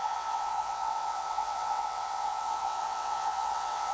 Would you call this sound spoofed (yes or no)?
yes